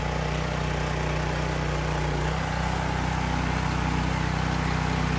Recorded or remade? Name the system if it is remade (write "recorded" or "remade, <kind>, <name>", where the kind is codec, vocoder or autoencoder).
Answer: recorded